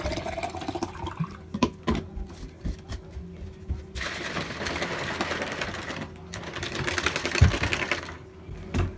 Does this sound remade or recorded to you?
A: recorded